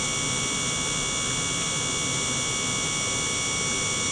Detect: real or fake real